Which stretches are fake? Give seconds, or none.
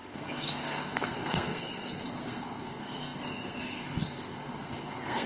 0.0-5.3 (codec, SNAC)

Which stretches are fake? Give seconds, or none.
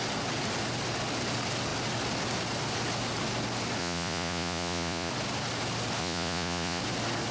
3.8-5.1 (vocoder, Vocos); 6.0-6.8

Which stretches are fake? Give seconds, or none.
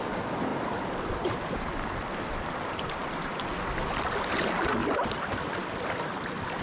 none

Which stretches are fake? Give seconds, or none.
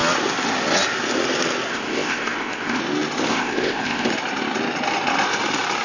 1.7-2.8 (codec, ZipCodec); 3.3-4.1